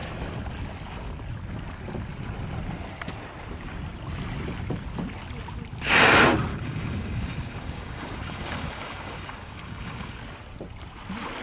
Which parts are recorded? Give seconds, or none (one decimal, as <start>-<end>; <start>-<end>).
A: 0.0-6.5; 10.2-11.4